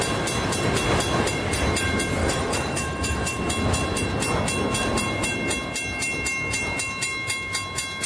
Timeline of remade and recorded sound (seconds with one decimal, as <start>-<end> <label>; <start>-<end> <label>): 0.0-2.2 recorded; 2.2-3.4 remade; 3.4-8.1 recorded